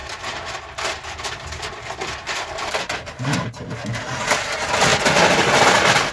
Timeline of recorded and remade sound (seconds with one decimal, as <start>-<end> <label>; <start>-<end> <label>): 0.0-6.1 recorded